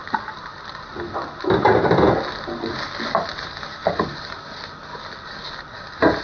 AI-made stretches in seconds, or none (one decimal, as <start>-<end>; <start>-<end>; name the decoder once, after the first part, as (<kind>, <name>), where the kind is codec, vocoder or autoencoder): none